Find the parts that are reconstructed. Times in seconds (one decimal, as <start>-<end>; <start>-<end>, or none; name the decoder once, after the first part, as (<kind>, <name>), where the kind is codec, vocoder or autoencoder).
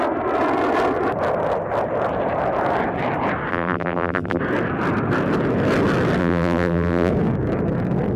3.5-4.4 (vocoder, BigVGAN v2); 6.2-7.1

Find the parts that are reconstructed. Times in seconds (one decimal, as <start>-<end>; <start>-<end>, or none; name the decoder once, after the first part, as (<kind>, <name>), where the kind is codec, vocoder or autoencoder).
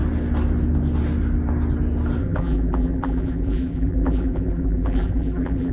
2.2-5.7 (vocoder, BigVGAN v2)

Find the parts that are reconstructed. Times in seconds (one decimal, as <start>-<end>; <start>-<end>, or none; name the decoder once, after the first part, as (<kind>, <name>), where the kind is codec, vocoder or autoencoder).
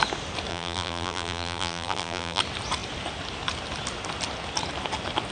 0.5-2.4 (vocoder, BigVGAN v2)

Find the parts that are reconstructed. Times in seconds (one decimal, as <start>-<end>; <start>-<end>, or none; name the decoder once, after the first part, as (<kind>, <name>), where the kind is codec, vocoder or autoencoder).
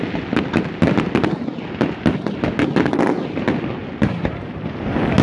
3.8-4.6 (vocoder, BigVGAN v2)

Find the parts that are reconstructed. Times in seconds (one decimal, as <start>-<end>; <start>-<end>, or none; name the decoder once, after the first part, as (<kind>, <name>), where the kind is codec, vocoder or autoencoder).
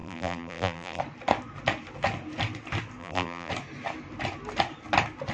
0.0-1.0 (vocoder, BigVGAN v2); 3.0-3.5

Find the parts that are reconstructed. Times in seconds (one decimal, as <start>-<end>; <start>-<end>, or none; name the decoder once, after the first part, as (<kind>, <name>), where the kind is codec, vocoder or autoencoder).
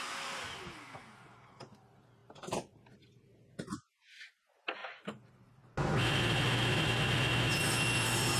2.2-2.8 (vocoder, BigVGAN v2)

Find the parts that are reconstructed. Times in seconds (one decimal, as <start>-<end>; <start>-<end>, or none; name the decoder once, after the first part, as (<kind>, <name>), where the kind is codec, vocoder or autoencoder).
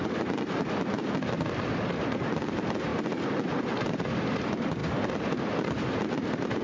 0.0-4.8 (vocoder, BigVGAN v2); 5.4-6.6